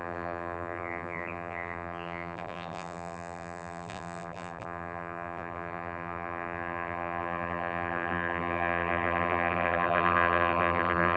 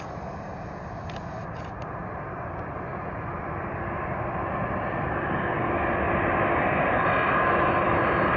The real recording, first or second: second